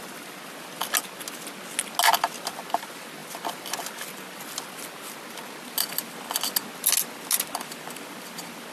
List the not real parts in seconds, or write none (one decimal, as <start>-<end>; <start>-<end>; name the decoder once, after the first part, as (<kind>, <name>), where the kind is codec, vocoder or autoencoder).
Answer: none